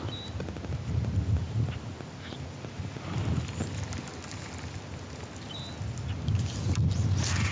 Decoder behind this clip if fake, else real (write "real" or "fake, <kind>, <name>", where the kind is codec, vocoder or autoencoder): real